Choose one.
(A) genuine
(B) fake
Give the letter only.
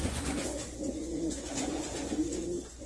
B